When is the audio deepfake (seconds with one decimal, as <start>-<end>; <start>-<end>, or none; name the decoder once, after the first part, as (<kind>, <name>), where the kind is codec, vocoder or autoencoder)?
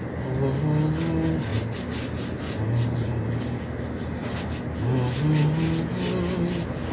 none